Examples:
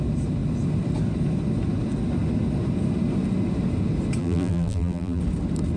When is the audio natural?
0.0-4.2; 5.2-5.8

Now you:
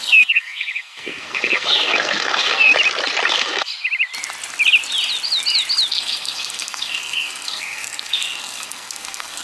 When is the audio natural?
2.7-3.3; 3.7-5.9

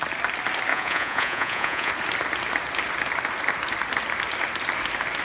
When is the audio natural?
0.0-0.7; 1.9-5.2

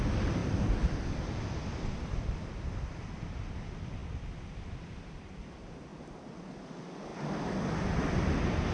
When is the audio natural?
5.9-6.5